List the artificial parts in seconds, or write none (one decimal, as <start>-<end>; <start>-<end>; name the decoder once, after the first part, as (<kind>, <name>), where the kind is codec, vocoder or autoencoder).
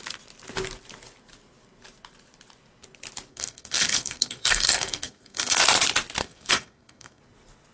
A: 3.3-5.6 (codec, SNAC); 6.2-7.2